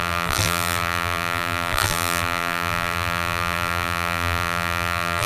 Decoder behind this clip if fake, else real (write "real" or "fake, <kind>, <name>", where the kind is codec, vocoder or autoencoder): fake, vocoder, BigVGAN v2